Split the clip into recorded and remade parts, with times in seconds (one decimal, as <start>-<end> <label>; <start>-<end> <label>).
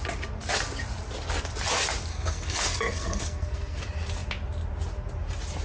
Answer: 0.0-2.1 recorded; 2.1-3.8 remade; 3.8-5.6 recorded